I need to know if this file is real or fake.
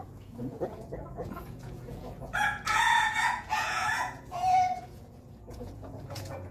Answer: fake